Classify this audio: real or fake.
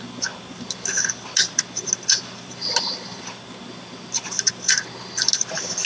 real